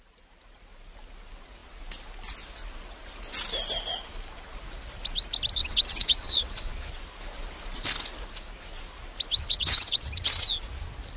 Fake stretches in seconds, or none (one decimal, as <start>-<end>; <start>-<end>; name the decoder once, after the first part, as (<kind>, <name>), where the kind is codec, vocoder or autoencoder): 5.6-6.9 (vocoder, WaveNeXt); 9.5-10.4